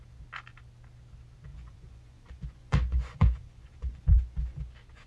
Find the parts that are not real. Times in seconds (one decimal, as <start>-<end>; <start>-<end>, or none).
1.5-4.6